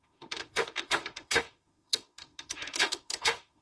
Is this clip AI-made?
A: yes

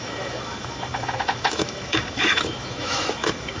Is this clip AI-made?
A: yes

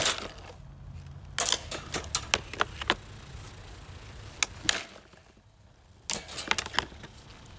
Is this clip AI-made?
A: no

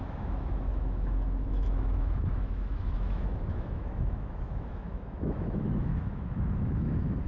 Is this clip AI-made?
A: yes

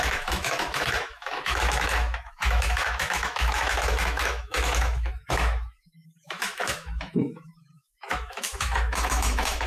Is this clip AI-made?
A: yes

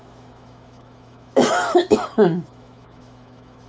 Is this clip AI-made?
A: yes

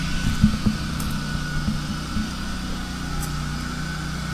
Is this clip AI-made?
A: no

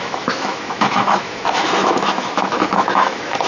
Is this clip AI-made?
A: yes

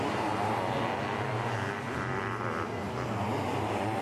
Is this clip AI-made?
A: no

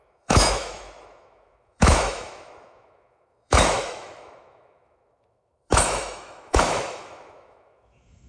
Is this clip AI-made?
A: yes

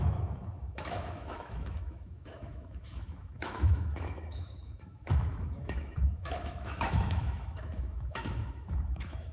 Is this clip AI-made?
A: yes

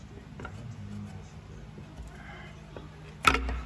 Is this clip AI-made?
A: no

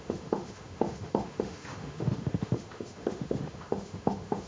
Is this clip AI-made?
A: yes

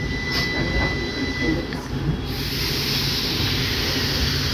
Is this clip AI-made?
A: no